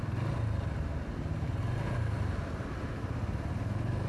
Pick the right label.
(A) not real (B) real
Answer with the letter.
B